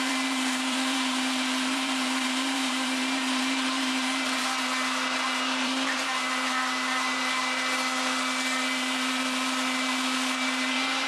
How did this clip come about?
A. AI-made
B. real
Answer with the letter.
A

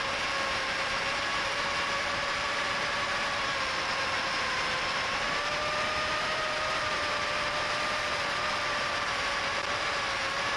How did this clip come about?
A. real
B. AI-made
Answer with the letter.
B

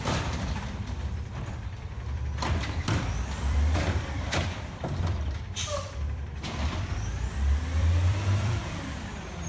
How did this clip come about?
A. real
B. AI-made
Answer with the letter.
B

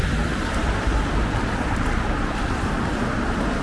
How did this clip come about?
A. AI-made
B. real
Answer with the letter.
A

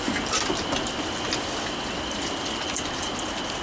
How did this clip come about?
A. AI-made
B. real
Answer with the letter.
B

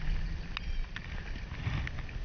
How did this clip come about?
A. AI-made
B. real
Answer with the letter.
B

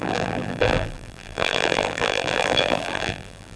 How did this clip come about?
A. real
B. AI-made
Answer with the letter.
B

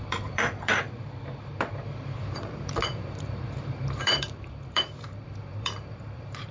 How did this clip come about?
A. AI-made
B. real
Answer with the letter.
A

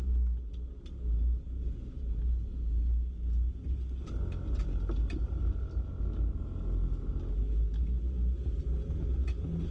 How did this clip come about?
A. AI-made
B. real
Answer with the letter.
B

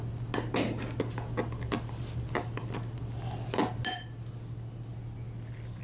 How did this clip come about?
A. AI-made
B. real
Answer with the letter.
B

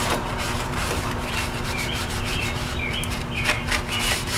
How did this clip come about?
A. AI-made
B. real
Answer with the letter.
A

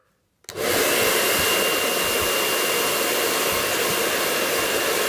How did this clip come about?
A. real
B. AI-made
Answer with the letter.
A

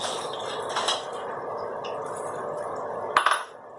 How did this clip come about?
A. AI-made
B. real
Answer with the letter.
B